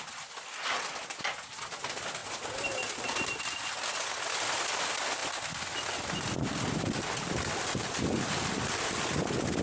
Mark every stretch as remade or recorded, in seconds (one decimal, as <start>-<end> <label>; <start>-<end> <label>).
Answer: 0.0-9.6 recorded

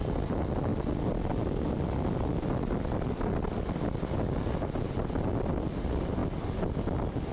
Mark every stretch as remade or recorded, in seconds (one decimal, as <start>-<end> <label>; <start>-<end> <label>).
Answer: 0.0-0.7 remade; 0.7-5.1 recorded; 5.1-6.2 remade; 6.2-6.7 recorded; 6.7-7.3 remade

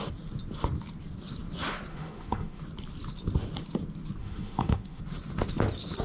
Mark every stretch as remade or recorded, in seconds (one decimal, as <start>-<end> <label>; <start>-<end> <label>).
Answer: 0.0-1.9 recorded; 1.9-2.6 remade; 2.6-4.2 recorded; 4.2-5.0 remade; 5.0-6.0 recorded